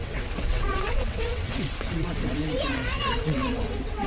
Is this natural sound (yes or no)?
no